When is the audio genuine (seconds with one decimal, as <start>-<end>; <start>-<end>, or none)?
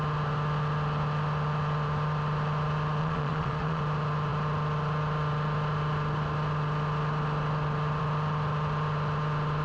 0.0-3.0; 3.8-9.6